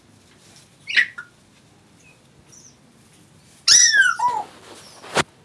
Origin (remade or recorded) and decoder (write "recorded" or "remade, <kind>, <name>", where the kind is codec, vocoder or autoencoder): recorded